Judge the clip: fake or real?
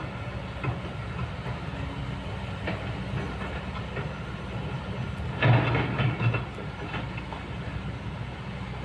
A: real